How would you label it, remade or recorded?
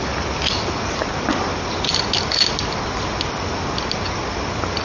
recorded